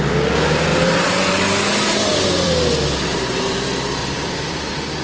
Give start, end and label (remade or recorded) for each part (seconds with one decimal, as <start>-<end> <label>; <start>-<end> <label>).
0.0-0.7 recorded; 0.7-1.4 remade; 1.4-2.1 recorded; 2.1-3.5 remade; 3.5-4.0 recorded; 4.0-5.0 remade